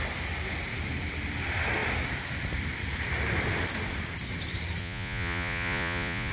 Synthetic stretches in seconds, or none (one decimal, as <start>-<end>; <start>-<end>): 4.8-6.3